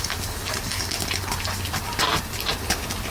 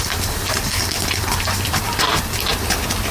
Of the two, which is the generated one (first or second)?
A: second